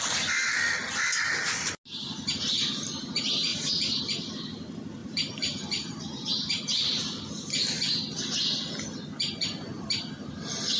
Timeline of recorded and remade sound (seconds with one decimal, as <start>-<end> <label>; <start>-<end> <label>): 0.0-2.5 recorded; 2.5-3.1 remade; 3.1-3.5 recorded; 3.5-4.0 remade; 4.0-5.0 recorded; 5.0-7.7 remade; 7.7-10.8 recorded